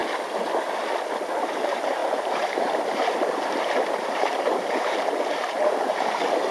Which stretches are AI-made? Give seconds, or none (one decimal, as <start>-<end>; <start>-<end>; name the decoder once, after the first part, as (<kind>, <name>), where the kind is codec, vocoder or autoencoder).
1.4-6.5 (vocoder, BigVGAN v2)